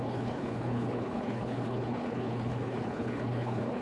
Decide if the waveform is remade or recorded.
remade